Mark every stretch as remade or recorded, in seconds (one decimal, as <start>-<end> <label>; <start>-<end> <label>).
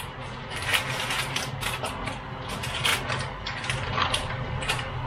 0.0-0.7 remade; 0.7-2.5 recorded; 2.5-2.9 remade; 2.9-3.9 recorded; 3.9-5.1 remade